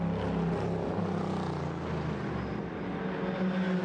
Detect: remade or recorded recorded